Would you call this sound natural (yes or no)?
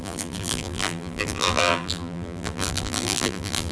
no